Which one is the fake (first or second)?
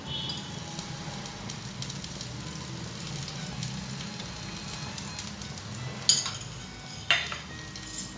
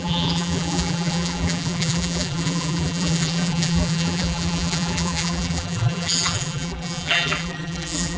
second